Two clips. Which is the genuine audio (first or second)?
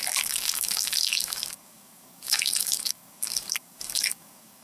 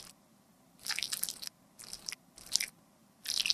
second